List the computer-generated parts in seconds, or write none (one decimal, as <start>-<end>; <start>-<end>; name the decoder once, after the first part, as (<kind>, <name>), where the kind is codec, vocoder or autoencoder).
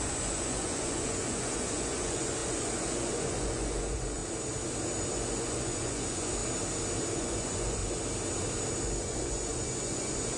0.0-4.2 (vocoder, Vocos); 5.1-6.4; 7.1-7.8; 8.8-10.4